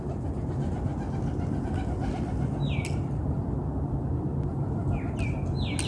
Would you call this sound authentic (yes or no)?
yes